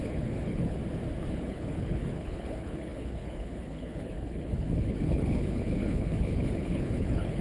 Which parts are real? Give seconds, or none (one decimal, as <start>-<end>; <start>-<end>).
0.8-1.3